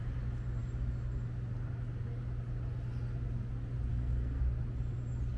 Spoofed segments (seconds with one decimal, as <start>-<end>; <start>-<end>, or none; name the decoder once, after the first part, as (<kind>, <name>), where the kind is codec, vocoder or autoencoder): 3.9-4.4 (codec, SNAC)